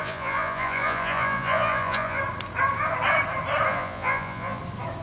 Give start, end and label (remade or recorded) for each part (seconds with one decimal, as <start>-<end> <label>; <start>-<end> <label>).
0.0-2.2 remade; 2.2-3.7 recorded; 3.7-4.6 remade; 4.6-5.0 recorded